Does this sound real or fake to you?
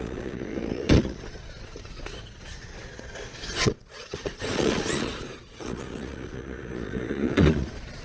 fake